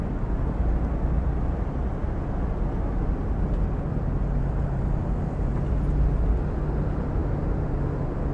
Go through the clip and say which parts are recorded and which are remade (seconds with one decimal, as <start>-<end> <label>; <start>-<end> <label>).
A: 0.0-8.3 recorded